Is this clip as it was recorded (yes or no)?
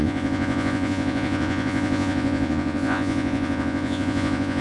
no